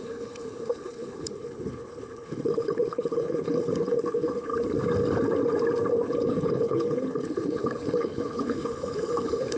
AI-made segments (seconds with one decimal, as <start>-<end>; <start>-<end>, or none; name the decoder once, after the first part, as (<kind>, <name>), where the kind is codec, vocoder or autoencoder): 0.0-4.5 (codec, HILCodec); 5.9-9.6